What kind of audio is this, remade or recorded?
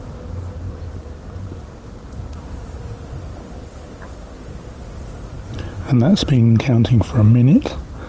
recorded